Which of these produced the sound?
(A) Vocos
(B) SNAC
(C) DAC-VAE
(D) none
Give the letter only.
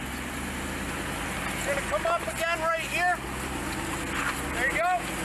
D